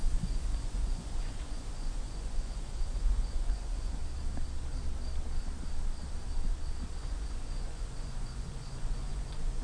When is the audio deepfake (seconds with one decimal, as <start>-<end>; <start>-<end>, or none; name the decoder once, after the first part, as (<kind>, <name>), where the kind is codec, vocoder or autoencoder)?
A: 0.0-4.0 (vocoder, Vocos); 7.0-9.6